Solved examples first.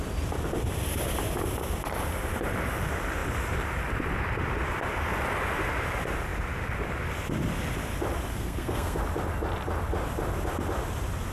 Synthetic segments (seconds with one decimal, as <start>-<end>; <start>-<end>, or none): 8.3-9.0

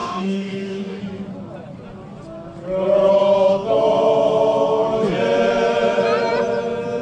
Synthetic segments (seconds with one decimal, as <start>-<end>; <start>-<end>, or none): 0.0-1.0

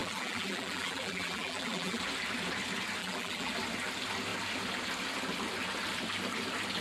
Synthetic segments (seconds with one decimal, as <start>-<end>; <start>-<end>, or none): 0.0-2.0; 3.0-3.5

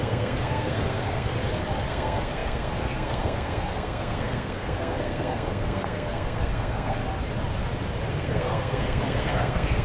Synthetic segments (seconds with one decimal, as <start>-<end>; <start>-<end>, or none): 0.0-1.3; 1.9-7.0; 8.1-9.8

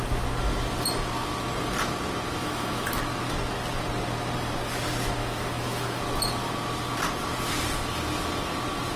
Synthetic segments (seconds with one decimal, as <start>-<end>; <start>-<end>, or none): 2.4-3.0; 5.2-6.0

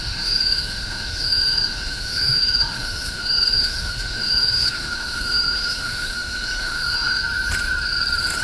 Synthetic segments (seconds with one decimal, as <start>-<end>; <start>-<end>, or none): 0.0-7.2